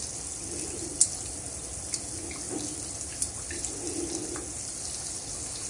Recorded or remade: recorded